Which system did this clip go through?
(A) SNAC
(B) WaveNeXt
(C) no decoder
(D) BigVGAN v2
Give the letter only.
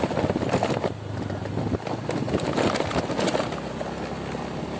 C